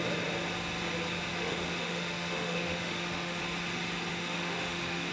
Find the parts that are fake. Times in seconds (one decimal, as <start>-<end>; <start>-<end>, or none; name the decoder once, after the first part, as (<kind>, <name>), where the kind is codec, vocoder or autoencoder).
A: 1.3-3.4 (autoencoder, DAC-VAE); 4.1-5.1